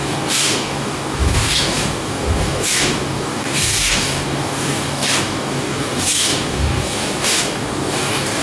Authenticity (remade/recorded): remade